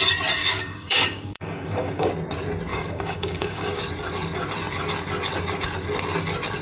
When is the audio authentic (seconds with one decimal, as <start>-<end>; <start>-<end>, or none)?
0.0-0.4; 2.1-2.7; 3.8-6.6